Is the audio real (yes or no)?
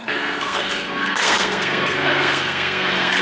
no